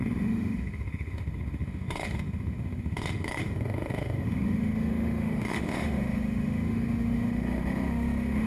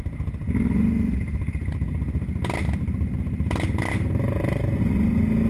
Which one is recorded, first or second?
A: second